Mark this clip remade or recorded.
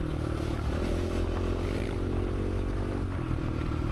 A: recorded